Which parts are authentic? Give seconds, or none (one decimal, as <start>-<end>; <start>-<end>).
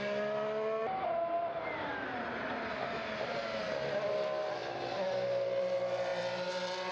0.0-1.9; 2.5-6.1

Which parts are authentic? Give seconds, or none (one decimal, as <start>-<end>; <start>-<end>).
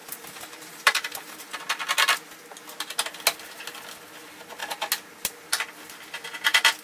1.6-6.8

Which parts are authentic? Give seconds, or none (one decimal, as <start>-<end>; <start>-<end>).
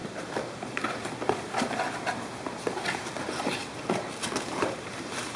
0.0-3.2; 3.6-4.4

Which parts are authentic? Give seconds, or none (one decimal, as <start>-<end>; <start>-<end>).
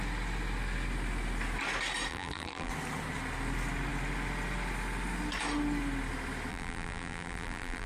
0.0-2.1; 2.7-6.5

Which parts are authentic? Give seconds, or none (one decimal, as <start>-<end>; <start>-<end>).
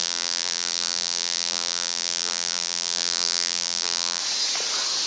4.2-5.1